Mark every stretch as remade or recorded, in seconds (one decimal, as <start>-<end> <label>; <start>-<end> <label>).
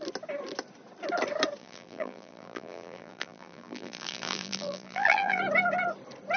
0.0-1.6 recorded; 1.6-5.4 remade; 5.4-6.4 recorded